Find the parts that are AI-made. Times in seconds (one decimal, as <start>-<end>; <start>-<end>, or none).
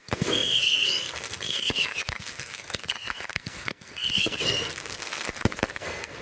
0.0-6.2